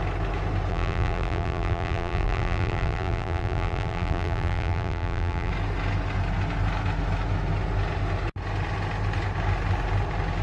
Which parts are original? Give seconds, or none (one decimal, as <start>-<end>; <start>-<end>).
0.0-0.7; 5.5-10.4